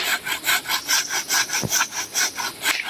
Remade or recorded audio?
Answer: recorded